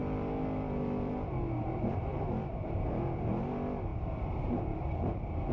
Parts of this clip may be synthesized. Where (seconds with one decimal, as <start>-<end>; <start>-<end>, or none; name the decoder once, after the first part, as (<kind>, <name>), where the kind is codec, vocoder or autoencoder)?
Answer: 0.0-5.5 (vocoder, BigVGAN v2)